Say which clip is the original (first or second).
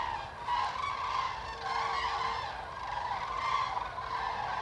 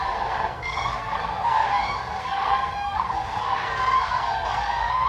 first